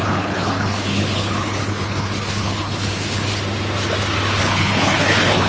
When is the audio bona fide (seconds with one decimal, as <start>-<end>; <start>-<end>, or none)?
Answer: 3.3-4.4

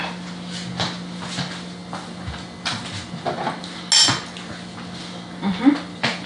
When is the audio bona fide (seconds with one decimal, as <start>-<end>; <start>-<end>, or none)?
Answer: 0.0-6.3

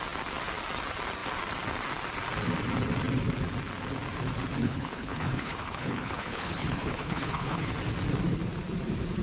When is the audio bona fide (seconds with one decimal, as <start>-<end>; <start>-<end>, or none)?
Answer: 0.0-4.6; 7.7-9.2

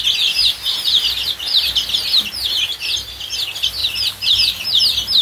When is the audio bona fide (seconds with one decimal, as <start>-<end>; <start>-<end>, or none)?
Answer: 0.0-0.4; 2.8-3.8; 4.8-5.2

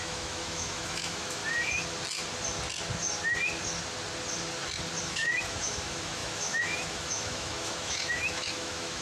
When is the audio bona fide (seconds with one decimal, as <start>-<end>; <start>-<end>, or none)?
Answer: 1.4-5.0

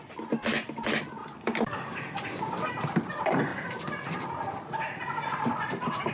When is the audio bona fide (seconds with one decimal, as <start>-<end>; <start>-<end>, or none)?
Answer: 0.0-1.2; 2.3-6.1

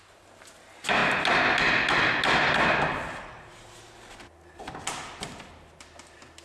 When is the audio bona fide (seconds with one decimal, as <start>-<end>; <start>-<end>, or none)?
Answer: 0.0-6.4